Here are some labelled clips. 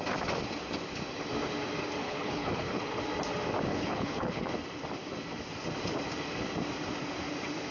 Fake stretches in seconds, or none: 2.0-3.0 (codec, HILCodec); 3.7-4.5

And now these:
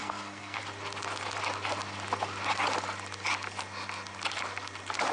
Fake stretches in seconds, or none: 0.0-0.6 (codec, SNAC)

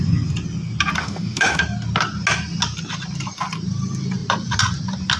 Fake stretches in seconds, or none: 1.0-1.6 (autoencoder, DAC-VAE)

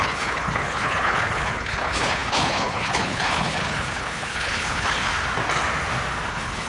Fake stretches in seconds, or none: 0.0-5.1 (codec, HILCodec); 6.3-6.7

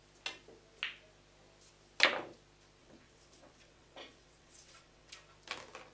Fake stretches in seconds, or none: 2.8-5.1 (vocoder, WaveNeXt)

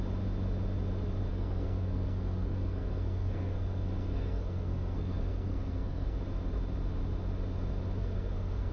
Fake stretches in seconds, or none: 1.3-6.2 (codec, SNAC); 8.0-8.7

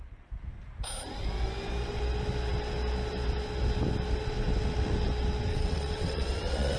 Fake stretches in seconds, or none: 5.5-6.8 (vocoder, WaveNeXt)

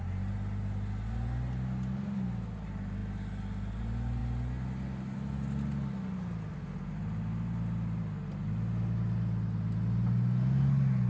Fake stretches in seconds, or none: none